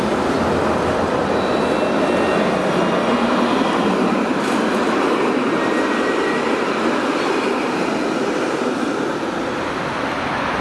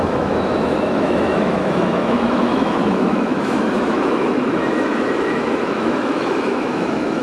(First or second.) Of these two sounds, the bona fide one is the first